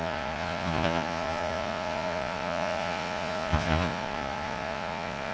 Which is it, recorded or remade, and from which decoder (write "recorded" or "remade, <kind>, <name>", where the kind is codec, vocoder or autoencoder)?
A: remade, vocoder, Vocos